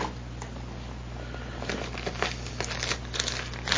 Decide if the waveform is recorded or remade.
recorded